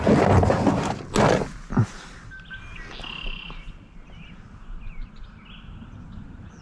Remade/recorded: recorded